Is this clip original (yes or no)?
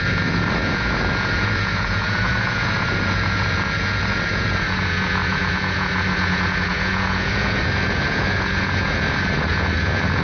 no